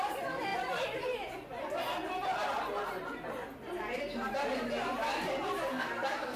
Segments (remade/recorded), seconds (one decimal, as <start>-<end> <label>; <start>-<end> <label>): 0.0-5.7 recorded; 5.7-6.4 remade